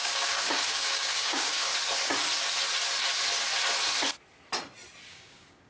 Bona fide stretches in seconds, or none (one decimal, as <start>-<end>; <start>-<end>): 1.7-5.1